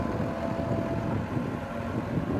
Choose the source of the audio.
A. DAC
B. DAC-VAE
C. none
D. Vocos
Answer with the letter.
C